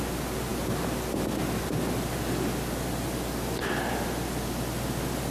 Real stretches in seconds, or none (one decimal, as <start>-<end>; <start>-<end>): 0.0-5.3